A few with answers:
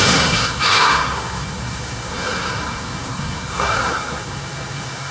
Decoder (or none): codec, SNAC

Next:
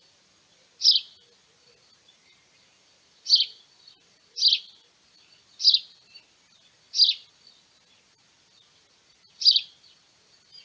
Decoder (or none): none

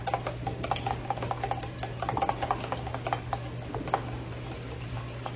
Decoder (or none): none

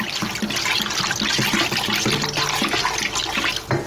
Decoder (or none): none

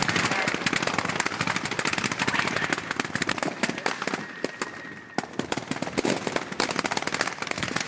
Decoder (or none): none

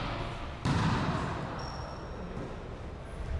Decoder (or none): none